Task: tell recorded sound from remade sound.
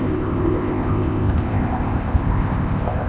remade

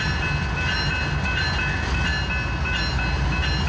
recorded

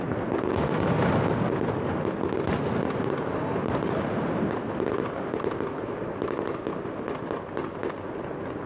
recorded